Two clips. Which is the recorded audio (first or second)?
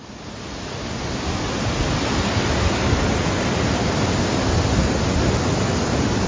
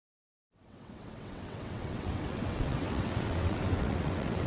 first